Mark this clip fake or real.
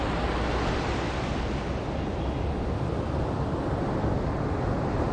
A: real